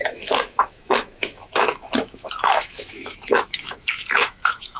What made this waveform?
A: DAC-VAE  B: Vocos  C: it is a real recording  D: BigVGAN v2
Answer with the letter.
A